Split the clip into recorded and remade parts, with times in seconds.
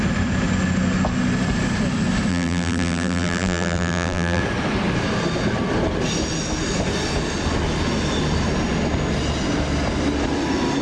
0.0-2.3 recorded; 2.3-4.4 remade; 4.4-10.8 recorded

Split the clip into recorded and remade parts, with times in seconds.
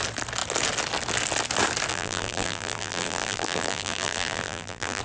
0.0-1.9 recorded; 1.9-5.0 remade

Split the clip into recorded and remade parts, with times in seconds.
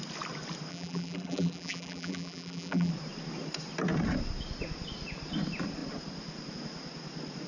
0.0-0.7 recorded; 0.7-2.9 remade; 2.9-7.5 recorded